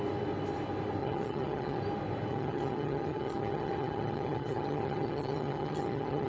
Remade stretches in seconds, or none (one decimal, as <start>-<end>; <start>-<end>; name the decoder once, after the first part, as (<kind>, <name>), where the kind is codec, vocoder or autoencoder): 1.0-1.8 (vocoder, HiFi-GAN); 2.3-6.3